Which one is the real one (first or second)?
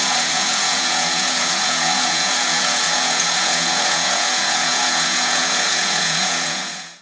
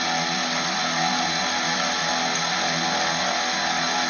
second